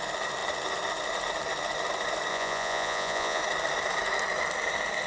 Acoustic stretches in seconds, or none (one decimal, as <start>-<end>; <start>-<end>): 0.0-2.3; 3.4-5.1

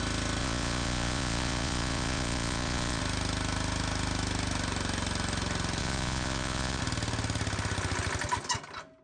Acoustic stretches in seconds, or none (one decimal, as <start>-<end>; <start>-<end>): 0.0-0.4; 3.0-5.8; 6.8-9.0

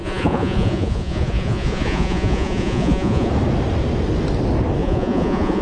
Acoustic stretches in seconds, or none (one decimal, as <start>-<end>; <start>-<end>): 3.3-4.8

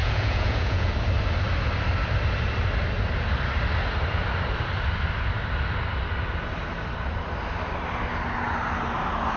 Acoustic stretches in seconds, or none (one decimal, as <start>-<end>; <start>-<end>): 0.9-9.4